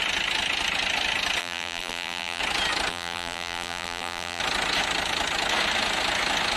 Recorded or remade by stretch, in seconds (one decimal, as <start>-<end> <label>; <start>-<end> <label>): 0.0-1.4 recorded; 1.4-2.4 remade; 2.4-2.9 recorded; 2.9-4.4 remade; 4.4-6.6 recorded